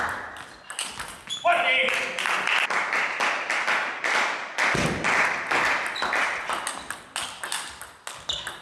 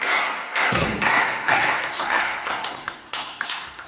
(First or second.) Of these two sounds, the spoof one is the second